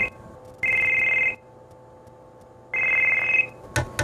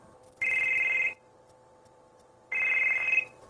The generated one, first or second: second